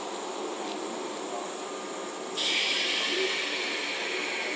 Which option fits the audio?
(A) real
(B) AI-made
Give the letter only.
A